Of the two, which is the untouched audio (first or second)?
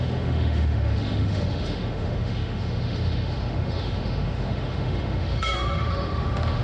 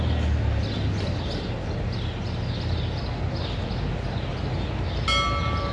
second